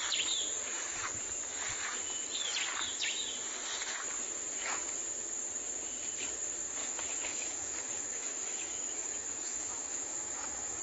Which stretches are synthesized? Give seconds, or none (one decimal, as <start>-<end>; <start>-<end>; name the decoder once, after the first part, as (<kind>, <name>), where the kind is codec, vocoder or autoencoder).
6.8-10.8 (autoencoder, DAC-VAE)